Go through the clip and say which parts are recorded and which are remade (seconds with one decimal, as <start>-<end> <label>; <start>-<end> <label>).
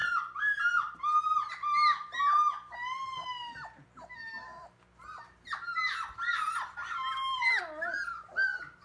0.0-0.6 remade; 0.6-6.8 recorded; 6.8-7.6 remade; 7.6-8.8 recorded